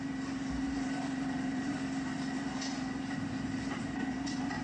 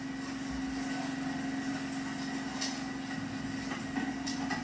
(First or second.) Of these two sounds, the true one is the second